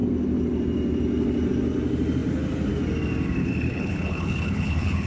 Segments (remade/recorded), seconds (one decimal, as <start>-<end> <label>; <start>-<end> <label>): 0.0-3.4 recorded; 3.4-5.1 remade

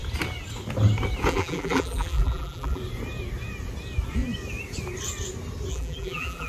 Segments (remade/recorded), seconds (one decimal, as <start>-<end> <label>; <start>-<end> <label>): 0.0-1.3 recorded; 1.3-2.8 remade; 2.8-5.7 recorded; 5.7-6.5 remade

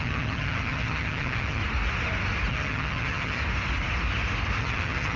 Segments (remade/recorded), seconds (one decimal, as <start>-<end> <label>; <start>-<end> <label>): 0.0-1.6 remade; 1.6-2.5 recorded; 2.5-3.4 remade; 3.4-4.6 recorded; 4.6-5.2 remade